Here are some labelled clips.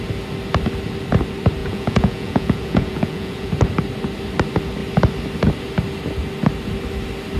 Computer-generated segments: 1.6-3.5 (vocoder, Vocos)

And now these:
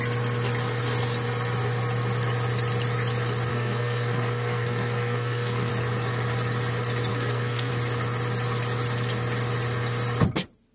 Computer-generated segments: 3.5-5.7 (codec, SNAC); 7.1-7.7

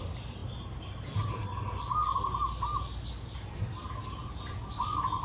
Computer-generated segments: none

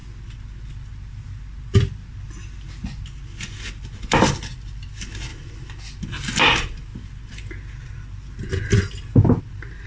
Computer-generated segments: 4.2-6.9 (vocoder, BigVGAN v2); 9.4-9.9

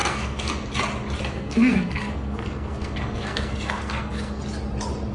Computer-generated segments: 0.0-0.5 (codec, SNAC); 1.3-4.4